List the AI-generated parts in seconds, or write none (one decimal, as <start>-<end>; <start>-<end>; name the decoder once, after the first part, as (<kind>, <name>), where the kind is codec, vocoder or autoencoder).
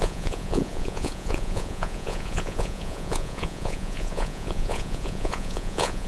0.0-6.1 (vocoder, Vocos)